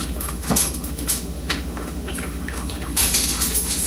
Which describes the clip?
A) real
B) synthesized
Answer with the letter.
B